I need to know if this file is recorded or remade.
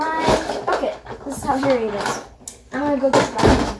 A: recorded